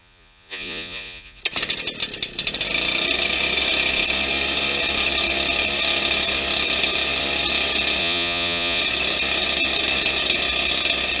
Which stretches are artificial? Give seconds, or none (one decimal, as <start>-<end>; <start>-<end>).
0.0-1.4; 8.0-8.8